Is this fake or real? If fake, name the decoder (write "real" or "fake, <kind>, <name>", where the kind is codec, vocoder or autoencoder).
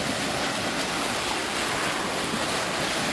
real